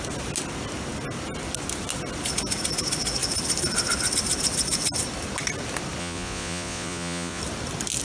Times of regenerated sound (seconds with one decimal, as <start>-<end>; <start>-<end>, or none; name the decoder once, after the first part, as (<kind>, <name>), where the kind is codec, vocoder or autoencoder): 6.0-7.4 (vocoder, Vocos)